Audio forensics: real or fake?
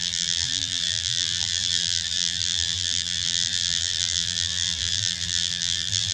fake